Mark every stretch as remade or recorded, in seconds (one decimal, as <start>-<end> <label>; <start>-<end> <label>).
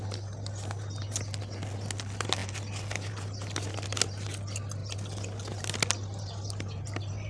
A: 0.0-7.3 recorded